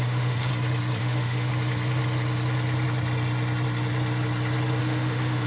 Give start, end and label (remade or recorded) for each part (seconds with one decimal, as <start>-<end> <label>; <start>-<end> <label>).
0.0-0.5 remade; 0.5-1.0 recorded; 1.0-1.5 remade; 1.5-4.8 recorded; 4.8-5.5 remade